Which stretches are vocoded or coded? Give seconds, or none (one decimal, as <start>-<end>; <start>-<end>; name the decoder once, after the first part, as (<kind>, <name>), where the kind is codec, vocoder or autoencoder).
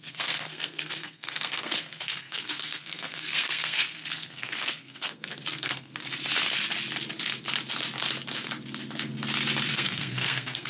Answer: 0.0-5.9 (codec, SNAC); 9.7-10.7